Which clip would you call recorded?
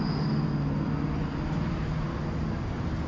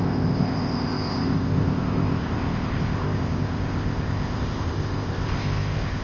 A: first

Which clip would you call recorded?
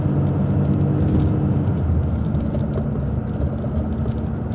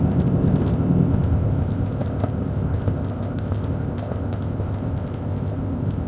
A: first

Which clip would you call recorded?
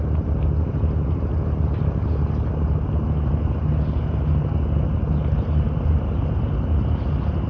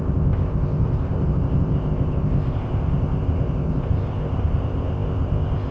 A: first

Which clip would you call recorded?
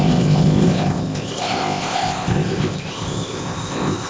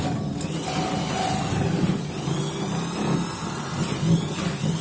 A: second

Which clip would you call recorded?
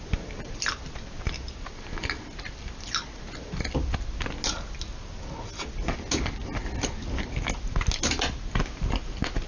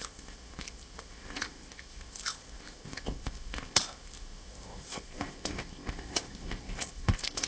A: first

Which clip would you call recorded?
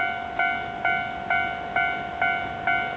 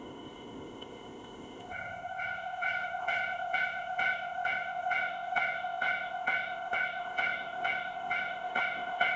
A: first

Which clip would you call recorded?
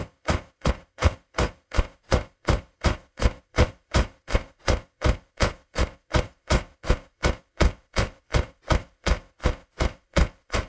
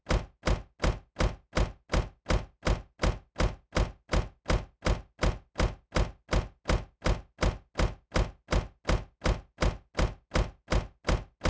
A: second